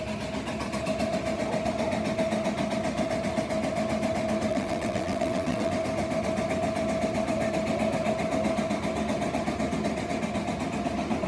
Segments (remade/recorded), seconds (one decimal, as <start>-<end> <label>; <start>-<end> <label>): 0.0-4.5 recorded; 4.5-5.7 remade; 5.7-11.3 recorded